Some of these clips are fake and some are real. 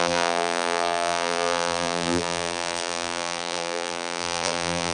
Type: fake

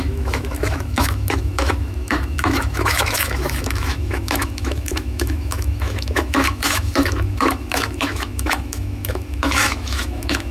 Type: fake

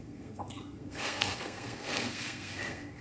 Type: fake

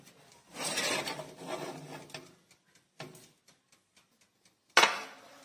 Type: real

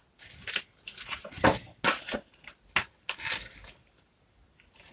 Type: real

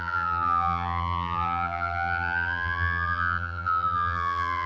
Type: fake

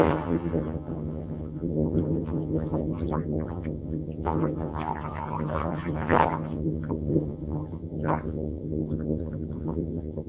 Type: fake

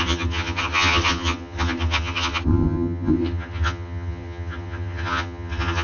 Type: fake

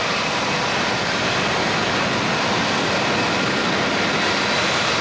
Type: real